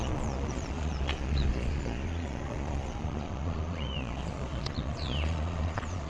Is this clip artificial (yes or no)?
yes